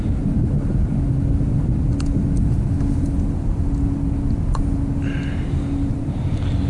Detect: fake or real real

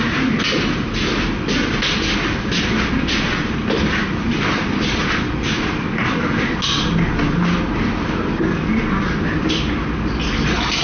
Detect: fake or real real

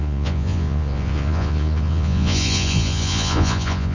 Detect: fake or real fake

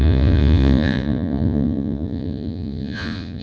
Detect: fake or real fake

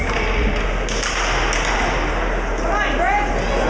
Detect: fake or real real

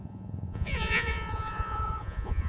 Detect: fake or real fake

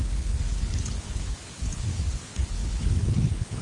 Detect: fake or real fake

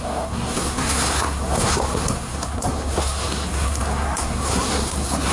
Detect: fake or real fake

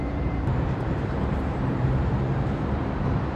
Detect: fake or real fake